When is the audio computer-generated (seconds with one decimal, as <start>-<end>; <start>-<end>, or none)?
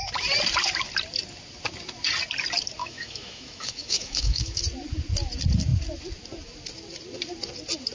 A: 2.8-4.6